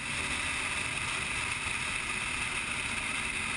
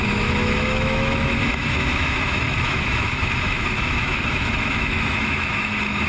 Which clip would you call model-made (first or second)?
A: second